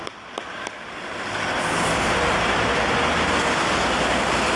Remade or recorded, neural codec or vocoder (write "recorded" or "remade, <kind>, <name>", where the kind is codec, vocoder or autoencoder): recorded